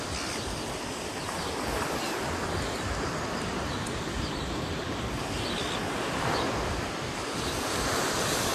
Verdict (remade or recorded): recorded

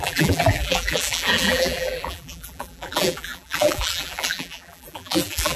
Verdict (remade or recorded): remade